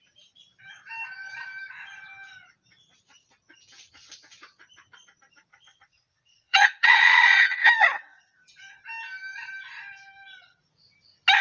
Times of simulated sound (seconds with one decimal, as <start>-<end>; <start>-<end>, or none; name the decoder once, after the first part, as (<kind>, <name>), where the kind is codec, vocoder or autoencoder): 5.5-8.2 (vocoder, WaveNeXt)